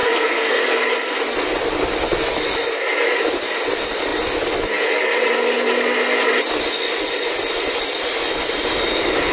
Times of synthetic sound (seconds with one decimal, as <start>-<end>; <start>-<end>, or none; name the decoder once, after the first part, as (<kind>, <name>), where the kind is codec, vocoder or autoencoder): 0.0-0.6 (codec, SNAC)